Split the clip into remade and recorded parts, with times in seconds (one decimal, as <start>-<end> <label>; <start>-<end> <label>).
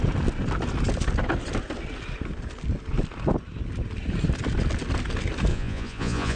0.0-5.5 recorded; 5.5-6.4 remade